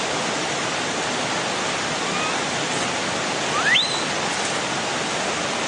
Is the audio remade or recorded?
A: recorded